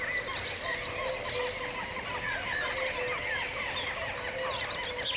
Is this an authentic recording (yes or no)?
yes